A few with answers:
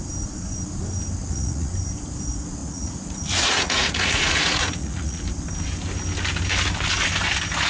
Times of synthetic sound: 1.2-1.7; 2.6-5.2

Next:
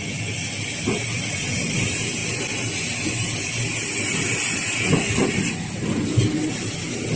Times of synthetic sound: none

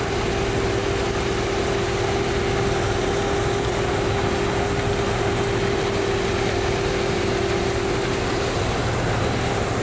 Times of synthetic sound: none

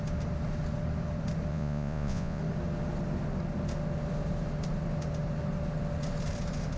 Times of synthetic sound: 1.5-2.4

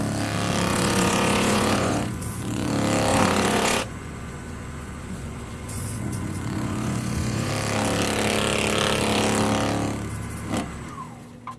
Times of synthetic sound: 0.7-2.7; 3.1-7.5

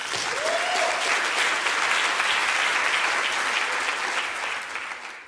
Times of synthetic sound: none

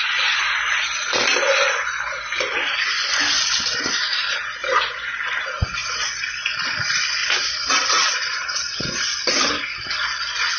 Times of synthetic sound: 7.2-9.2